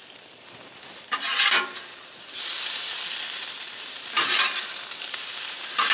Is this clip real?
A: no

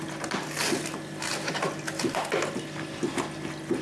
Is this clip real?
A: yes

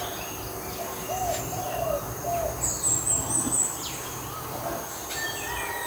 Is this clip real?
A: yes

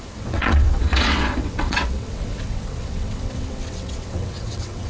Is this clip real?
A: no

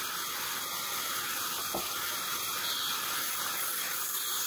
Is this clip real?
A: yes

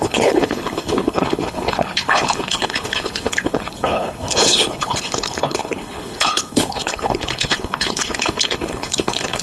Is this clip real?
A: no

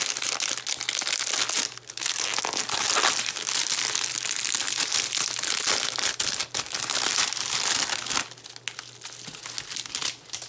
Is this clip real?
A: yes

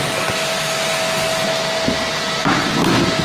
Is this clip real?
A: yes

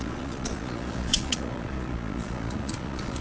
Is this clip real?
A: no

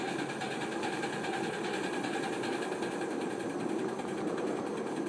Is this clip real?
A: yes